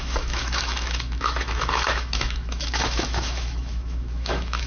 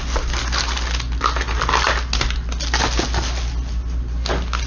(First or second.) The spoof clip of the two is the first